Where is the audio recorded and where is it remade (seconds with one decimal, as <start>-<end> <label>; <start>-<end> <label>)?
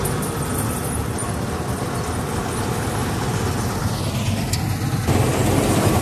0.0-1.0 recorded; 1.0-1.8 remade; 1.8-3.0 recorded; 3.0-4.0 remade; 4.0-6.0 recorded